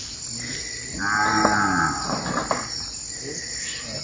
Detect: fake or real real